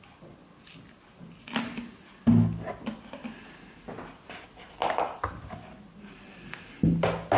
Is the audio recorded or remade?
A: recorded